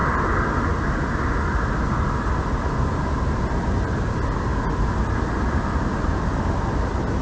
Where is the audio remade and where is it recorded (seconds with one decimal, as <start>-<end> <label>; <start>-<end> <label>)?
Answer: 0.0-7.2 recorded